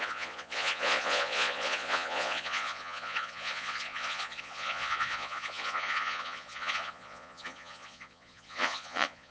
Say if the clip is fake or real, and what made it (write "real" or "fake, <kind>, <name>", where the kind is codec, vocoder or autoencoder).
fake, vocoder, Vocos